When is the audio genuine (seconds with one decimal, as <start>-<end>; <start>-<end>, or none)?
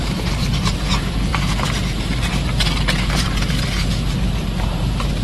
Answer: none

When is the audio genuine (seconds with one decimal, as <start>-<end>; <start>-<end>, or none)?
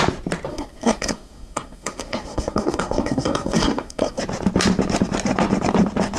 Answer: 0.0-0.5; 4.2-6.2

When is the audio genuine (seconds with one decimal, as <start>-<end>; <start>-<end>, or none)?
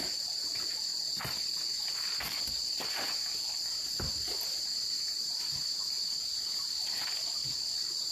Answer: 0.0-5.6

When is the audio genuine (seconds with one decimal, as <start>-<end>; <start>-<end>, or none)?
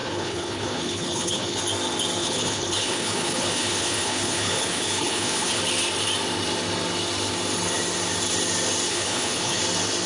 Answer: 1.6-2.2; 5.6-8.9; 9.6-10.1